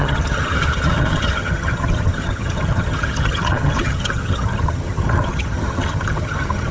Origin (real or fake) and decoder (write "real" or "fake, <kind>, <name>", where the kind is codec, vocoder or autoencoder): fake, vocoder, HiFi-GAN